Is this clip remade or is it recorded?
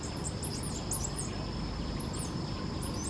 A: recorded